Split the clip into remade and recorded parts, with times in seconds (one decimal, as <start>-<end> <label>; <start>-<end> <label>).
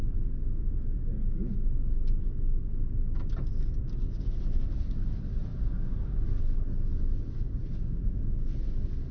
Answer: 0.0-5.5 recorded; 5.5-6.4 remade; 6.4-9.1 recorded